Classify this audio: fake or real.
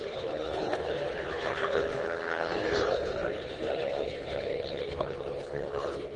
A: fake